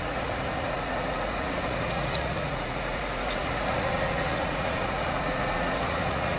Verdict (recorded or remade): remade